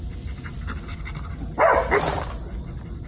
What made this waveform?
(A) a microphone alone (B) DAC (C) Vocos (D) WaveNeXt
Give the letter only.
A